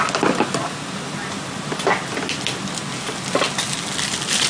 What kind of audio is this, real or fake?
real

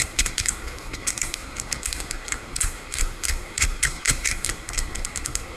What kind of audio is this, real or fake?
fake